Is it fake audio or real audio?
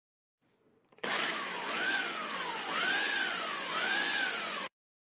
fake